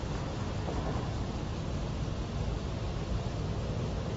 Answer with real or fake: real